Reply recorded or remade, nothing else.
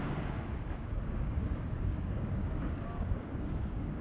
remade